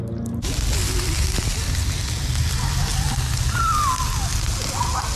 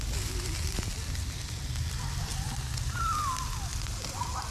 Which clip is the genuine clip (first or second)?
first